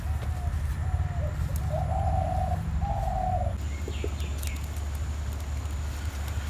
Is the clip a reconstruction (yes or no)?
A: no